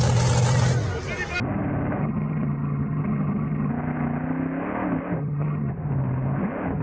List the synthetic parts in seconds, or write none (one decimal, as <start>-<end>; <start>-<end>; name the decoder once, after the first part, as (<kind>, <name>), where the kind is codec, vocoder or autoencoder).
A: 2.0-3.7 (vocoder, HiFi-GAN); 5.2-5.7